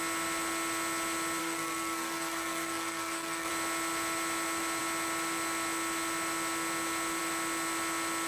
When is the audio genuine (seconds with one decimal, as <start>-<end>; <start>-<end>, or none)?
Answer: 0.0-1.4; 3.5-8.3